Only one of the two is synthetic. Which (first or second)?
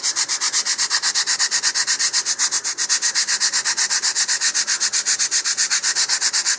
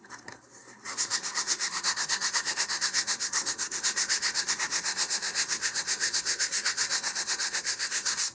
second